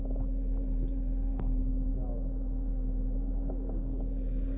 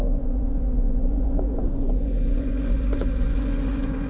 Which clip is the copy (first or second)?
second